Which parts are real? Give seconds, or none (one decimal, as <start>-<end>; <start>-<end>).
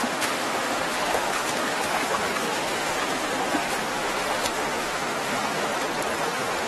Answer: 5.7-6.2